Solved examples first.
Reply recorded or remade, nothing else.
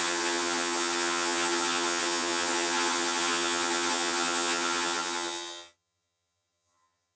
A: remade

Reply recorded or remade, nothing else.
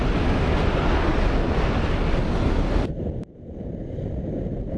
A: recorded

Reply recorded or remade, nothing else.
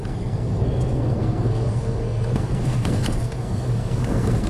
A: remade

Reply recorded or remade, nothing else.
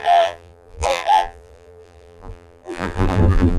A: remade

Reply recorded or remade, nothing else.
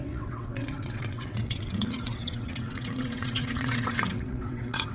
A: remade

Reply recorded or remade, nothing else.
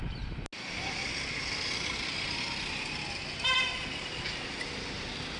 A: recorded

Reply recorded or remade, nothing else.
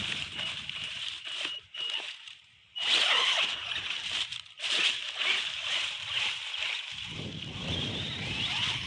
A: remade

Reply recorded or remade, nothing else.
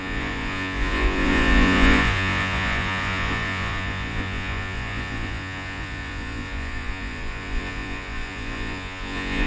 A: remade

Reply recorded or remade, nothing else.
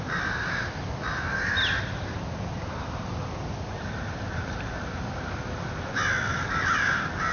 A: recorded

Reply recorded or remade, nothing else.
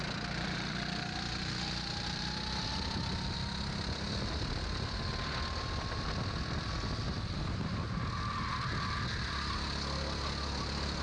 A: recorded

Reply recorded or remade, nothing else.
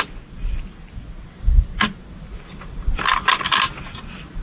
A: recorded